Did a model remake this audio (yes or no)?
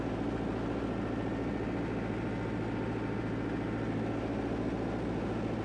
no